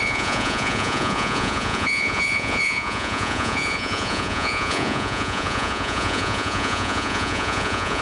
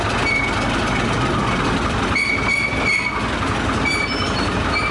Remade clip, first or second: first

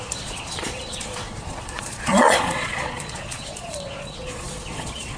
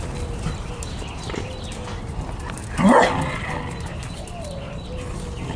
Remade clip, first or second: first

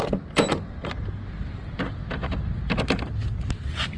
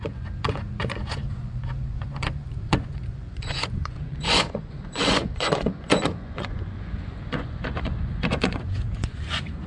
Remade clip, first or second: second